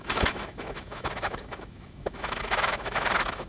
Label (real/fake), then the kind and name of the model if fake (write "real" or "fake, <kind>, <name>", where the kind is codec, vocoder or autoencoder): fake, autoencoder, DAC-VAE